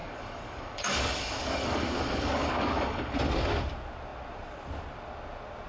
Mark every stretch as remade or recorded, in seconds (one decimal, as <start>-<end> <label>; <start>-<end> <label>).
0.0-3.2 remade; 3.2-5.7 recorded